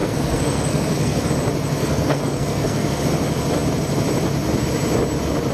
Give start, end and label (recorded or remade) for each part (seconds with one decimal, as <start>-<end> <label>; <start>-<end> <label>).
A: 0.0-1.3 remade; 1.3-1.8 recorded; 1.8-3.0 remade; 3.0-5.5 recorded